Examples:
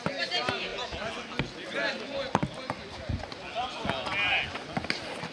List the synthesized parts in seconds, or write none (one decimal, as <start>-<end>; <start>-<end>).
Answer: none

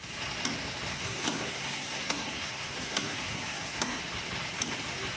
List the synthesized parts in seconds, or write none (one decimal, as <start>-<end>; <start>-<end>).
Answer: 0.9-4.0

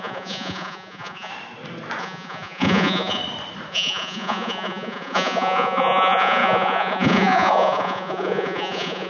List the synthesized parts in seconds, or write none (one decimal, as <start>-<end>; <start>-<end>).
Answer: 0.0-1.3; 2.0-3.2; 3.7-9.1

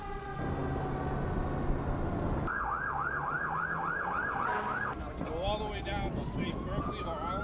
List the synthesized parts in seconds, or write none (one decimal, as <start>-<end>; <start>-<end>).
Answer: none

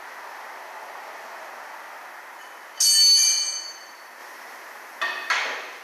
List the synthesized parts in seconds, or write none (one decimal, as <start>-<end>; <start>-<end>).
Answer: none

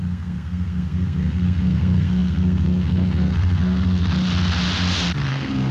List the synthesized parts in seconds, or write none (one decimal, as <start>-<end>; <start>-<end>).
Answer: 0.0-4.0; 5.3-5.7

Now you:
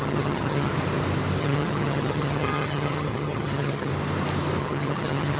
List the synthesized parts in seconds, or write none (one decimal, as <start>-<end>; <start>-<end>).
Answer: 0.0-0.7; 1.4-3.9; 4.6-5.4